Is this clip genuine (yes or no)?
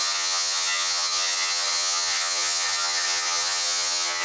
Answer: no